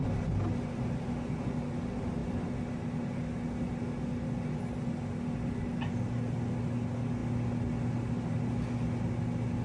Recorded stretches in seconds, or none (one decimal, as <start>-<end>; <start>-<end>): 0.0-9.6